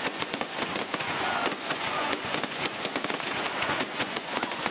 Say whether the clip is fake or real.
fake